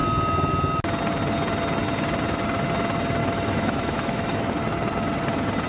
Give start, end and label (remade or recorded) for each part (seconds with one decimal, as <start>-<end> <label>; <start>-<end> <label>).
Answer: 0.0-3.2 recorded; 3.2-4.5 remade; 4.5-5.7 recorded